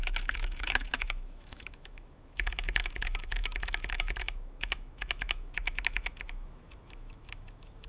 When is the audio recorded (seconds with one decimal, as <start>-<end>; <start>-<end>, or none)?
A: none